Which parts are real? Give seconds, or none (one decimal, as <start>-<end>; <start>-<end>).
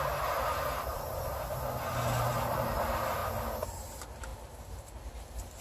0.0-0.9; 1.7-5.6